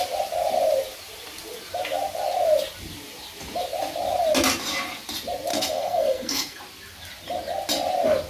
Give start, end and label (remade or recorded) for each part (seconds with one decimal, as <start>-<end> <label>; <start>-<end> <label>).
0.0-5.5 recorded; 5.5-6.6 remade; 6.6-8.3 recorded